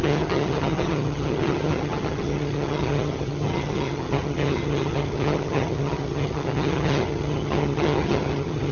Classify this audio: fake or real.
fake